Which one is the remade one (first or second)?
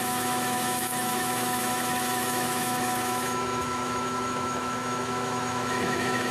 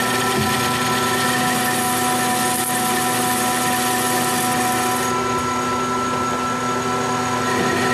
first